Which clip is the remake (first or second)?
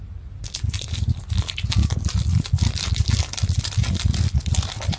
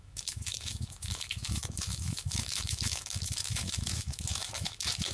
second